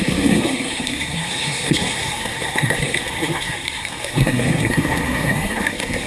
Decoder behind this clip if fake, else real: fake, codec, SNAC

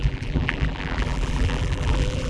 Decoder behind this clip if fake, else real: fake, vocoder, BigVGAN v2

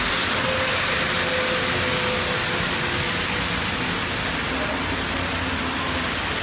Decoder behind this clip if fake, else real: real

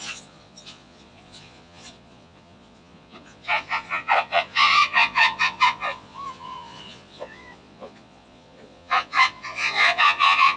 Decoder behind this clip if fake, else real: fake, vocoder, Vocos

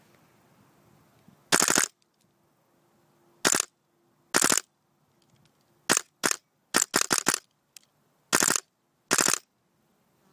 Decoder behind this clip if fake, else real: real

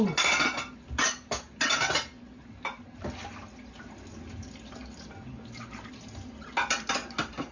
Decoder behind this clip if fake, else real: real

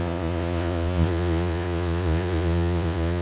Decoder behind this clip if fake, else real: fake, vocoder, Vocos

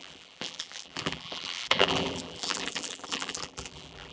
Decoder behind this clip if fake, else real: fake, vocoder, BigVGAN v2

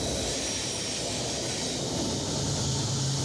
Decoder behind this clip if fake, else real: real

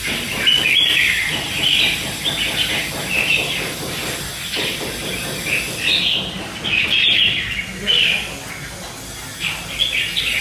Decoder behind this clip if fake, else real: real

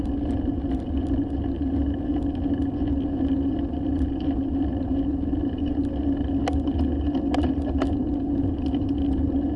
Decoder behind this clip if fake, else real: real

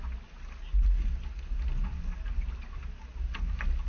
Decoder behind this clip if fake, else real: real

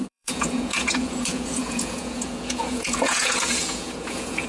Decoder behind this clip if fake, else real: fake, vocoder, Vocos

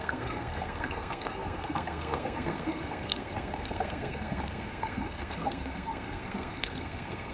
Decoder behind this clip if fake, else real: fake, codec, SNAC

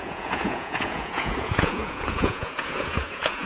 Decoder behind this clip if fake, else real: fake, vocoder, Vocos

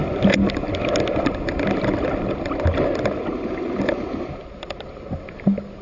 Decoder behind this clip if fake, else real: real